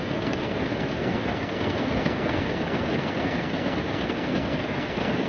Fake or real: fake